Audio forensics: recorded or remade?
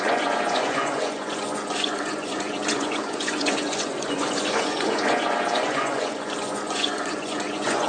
remade